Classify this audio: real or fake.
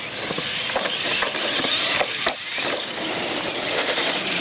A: real